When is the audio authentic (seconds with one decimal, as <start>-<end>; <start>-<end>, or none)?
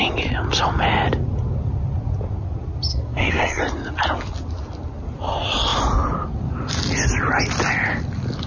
0.0-2.9; 3.6-8.5